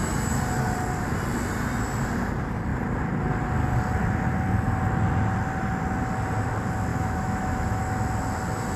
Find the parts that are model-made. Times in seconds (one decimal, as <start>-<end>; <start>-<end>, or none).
6.9-7.8